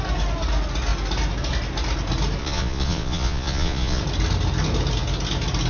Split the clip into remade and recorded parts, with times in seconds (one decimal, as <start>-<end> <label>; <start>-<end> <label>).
0.0-2.4 recorded; 2.4-4.0 remade; 4.0-5.7 recorded